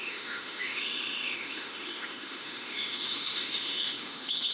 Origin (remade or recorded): remade